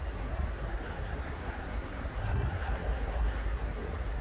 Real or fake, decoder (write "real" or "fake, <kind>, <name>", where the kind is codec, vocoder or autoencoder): fake, codec, SNAC